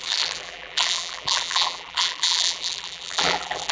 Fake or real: fake